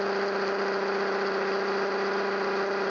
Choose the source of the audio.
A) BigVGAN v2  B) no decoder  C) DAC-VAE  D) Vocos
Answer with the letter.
B